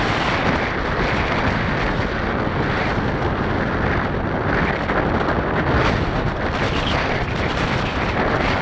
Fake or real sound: real